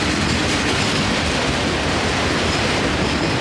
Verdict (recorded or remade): recorded